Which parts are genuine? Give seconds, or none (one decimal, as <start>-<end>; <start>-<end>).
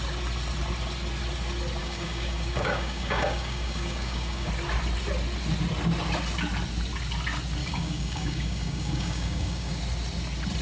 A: 0.0-1.8; 4.5-7.6; 9.8-10.6